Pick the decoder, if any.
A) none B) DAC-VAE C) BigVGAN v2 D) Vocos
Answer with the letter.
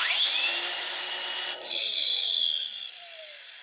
C